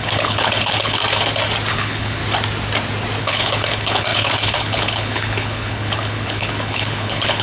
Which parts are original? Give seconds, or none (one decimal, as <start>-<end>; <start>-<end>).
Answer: 1.0-1.7; 2.2-3.2